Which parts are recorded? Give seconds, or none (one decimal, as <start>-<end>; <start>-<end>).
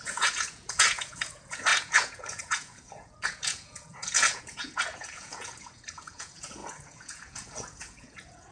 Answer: none